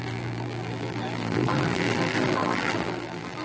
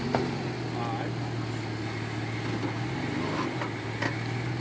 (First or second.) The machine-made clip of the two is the first